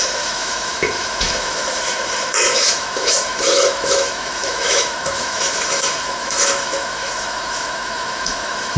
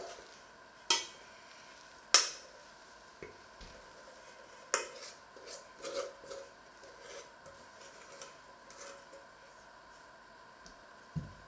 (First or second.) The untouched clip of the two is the second